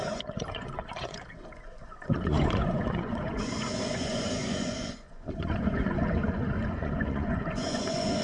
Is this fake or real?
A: fake